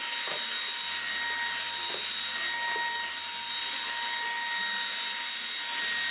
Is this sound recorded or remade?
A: recorded